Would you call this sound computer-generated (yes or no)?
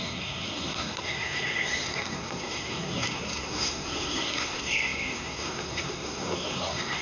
yes